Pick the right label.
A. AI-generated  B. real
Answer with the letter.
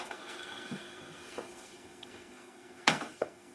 A